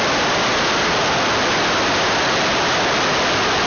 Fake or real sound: real